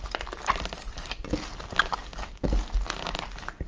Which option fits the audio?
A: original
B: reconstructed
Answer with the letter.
A